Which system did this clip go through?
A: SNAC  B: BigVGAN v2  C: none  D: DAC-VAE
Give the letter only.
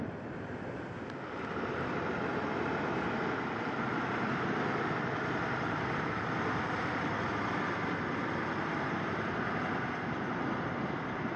B